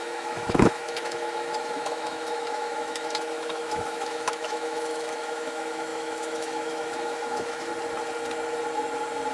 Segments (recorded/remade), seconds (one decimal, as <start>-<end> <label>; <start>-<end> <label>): 0.0-7.7 remade; 7.7-9.3 recorded